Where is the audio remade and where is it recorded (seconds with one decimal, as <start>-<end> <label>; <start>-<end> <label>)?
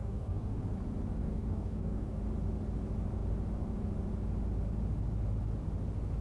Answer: 0.0-0.6 remade; 0.6-1.2 recorded; 1.2-2.2 remade; 2.2-6.2 recorded